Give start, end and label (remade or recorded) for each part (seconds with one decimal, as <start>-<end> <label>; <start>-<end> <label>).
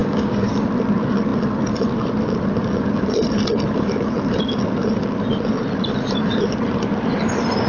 0.0-0.5 remade; 0.5-7.7 recorded